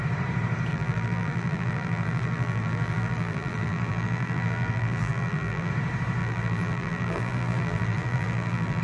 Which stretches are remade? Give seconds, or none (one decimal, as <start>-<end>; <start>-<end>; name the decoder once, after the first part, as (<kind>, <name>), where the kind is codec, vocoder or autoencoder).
0.7-5.7 (vocoder, BigVGAN v2); 6.2-8.8